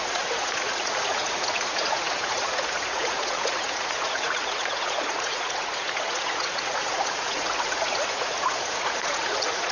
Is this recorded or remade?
remade